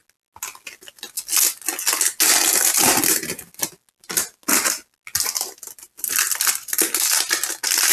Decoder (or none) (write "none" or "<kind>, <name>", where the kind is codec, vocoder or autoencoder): none